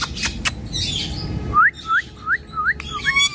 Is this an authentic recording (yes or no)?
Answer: yes